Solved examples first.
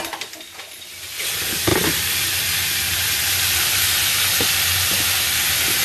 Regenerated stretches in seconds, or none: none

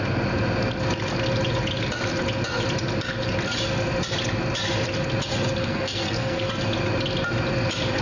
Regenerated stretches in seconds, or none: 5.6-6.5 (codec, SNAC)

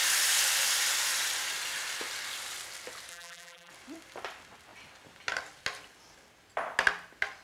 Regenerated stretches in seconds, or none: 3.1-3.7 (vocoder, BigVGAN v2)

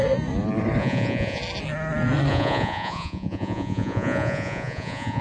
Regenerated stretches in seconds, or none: 0.8-1.4 (vocoder, Vocos); 2.3-5.2